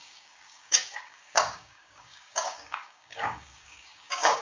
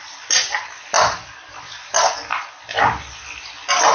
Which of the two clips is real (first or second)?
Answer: second